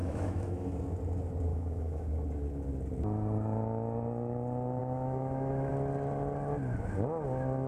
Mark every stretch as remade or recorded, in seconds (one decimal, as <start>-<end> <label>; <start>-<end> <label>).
0.0-0.8 remade; 0.8-1.5 recorded; 1.5-2.1 remade; 2.1-4.8 recorded; 4.8-5.7 remade; 5.7-7.7 recorded

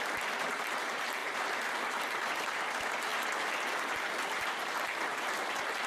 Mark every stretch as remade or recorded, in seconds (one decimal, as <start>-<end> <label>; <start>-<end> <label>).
0.0-5.9 recorded

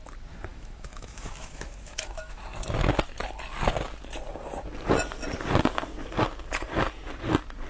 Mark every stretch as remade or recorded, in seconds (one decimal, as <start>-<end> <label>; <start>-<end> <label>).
0.0-0.5 recorded; 0.5-2.4 remade; 2.4-7.7 recorded

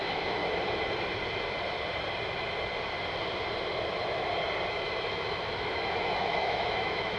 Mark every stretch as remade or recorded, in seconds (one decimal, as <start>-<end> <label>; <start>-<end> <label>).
0.0-0.4 remade; 0.4-4.7 recorded; 4.7-7.2 remade

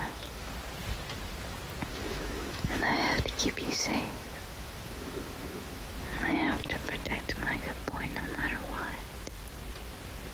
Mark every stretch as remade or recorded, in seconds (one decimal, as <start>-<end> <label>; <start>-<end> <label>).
0.0-0.5 remade; 0.5-1.9 recorded; 1.9-6.9 remade; 6.9-10.3 recorded